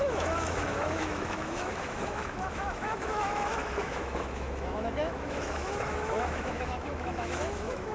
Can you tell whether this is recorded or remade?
remade